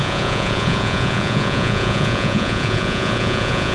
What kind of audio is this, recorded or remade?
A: remade